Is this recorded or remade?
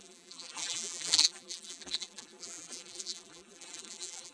remade